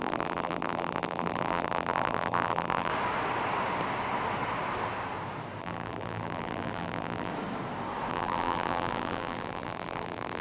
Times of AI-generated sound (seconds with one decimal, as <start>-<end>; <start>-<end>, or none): 0.0-2.9; 5.6-7.3; 8.1-10.4